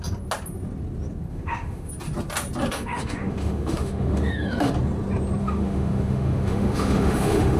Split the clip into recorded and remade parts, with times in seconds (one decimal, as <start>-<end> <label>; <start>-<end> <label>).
0.0-1.3 recorded; 1.3-1.9 remade; 1.9-2.7 recorded; 2.7-4.7 remade; 4.7-5.4 recorded; 5.4-7.6 remade